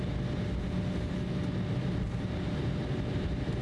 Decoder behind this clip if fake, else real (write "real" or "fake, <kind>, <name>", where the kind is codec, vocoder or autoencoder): real